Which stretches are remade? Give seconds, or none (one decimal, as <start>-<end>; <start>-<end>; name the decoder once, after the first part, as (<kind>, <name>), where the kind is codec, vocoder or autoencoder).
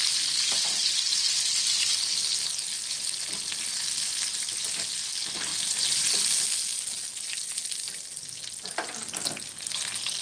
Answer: none